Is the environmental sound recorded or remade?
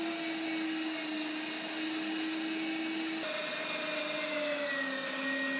recorded